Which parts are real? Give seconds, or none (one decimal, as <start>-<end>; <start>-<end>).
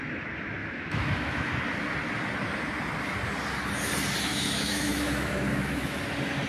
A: 0.0-0.6; 1.5-4.3; 6.0-6.5